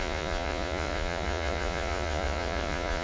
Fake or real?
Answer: fake